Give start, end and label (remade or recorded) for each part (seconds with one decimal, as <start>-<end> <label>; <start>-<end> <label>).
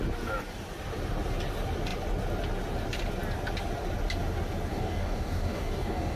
0.0-4.7 recorded; 4.7-6.2 remade